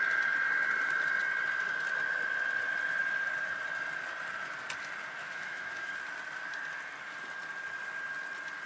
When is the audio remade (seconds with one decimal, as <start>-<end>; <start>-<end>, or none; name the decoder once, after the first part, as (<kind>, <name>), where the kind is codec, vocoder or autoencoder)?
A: 5.2-5.9 (autoencoder, DAC-VAE)